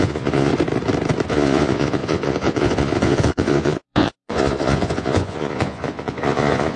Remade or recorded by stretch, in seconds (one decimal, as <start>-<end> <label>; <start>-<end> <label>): 0.0-0.5 remade; 0.5-1.3 recorded; 1.3-6.8 remade

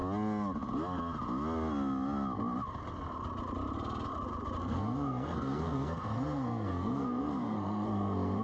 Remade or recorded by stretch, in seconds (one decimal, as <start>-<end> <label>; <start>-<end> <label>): 0.0-4.6 recorded; 4.6-8.4 remade

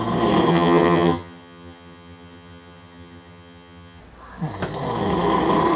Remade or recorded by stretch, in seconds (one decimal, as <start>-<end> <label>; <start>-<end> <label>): 0.0-0.5 recorded; 0.5-4.0 remade; 4.0-5.8 recorded

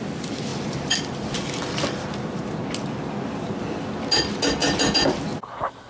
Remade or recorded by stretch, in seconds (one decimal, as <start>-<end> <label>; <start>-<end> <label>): 0.0-0.5 recorded; 0.5-2.6 remade; 2.6-4.6 recorded; 4.6-5.2 remade; 5.2-5.9 recorded

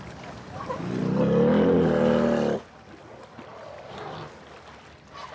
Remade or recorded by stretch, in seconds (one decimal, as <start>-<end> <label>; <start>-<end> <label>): 0.0-5.3 recorded

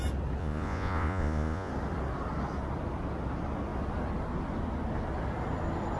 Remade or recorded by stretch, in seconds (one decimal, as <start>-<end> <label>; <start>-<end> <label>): 0.0-0.4 recorded; 0.4-1.7 remade; 1.7-6.0 recorded